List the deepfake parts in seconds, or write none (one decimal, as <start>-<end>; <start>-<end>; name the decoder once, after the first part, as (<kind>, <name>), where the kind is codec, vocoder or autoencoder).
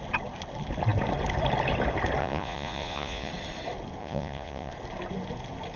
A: 2.2-3.3 (vocoder, Vocos); 4.0-4.7